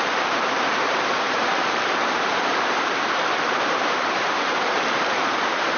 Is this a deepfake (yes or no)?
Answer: yes